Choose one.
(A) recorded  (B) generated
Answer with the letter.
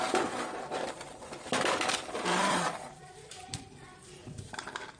B